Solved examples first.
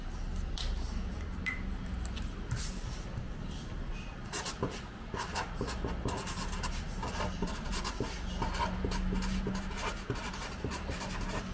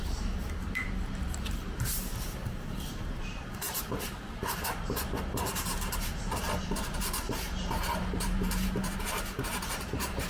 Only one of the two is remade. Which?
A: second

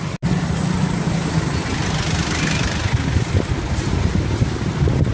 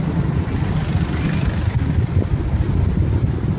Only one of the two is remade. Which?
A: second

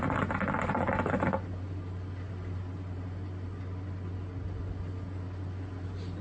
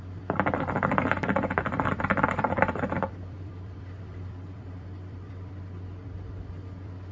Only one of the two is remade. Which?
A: second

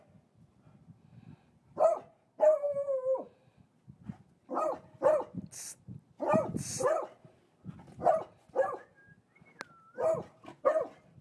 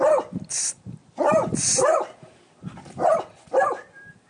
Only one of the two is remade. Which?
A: second